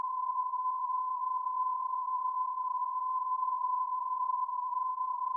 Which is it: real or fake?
fake